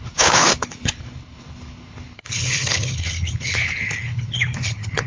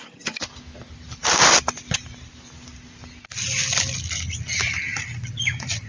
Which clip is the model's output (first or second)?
first